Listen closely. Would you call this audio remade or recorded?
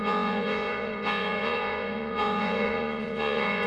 remade